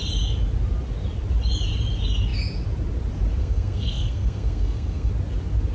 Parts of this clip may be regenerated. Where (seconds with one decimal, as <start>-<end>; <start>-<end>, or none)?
3.4-5.1

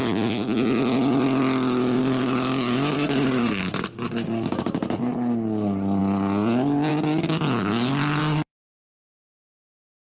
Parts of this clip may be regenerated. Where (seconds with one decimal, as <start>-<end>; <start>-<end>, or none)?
2.0-3.6; 8.2-8.9